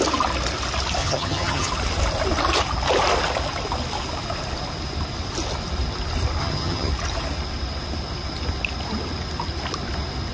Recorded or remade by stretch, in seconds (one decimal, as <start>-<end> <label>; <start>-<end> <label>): 0.0-1.0 recorded; 1.0-1.7 remade; 1.7-6.4 recorded; 6.4-6.9 remade; 6.9-10.3 recorded